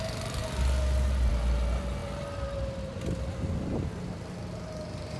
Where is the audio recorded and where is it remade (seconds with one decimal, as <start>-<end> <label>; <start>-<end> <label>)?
0.0-5.2 recorded